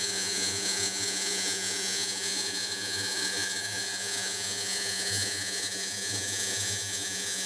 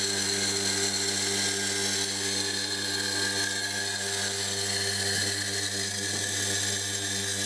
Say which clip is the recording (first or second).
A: second